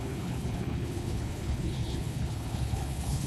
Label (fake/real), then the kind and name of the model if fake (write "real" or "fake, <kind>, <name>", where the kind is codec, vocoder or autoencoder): fake, codec, HILCodec